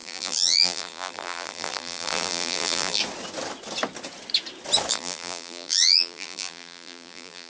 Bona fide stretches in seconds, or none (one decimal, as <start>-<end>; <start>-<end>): 3.0-4.9